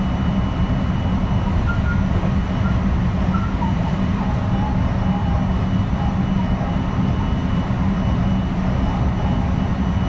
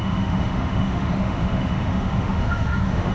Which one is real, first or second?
first